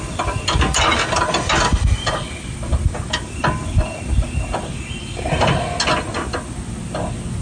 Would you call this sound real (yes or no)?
yes